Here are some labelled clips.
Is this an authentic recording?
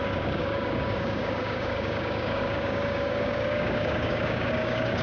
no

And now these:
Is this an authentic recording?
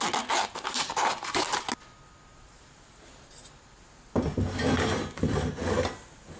yes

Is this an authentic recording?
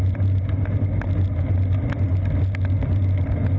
yes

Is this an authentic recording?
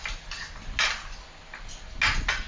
yes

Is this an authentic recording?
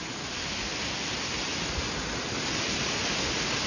yes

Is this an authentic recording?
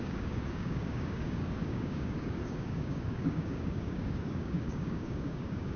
no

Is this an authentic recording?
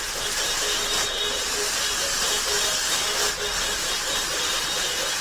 yes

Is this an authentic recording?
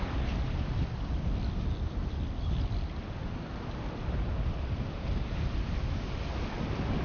yes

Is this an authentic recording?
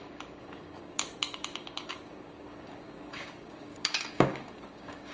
no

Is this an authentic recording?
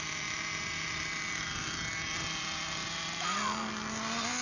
yes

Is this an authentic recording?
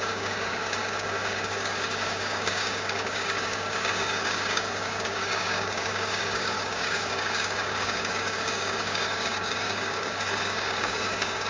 no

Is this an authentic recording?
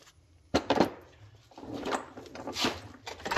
yes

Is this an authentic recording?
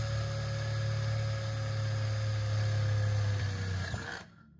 yes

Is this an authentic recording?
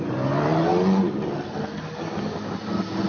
yes